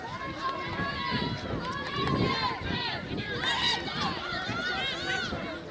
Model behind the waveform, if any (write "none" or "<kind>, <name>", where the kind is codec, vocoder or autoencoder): vocoder, BigVGAN v2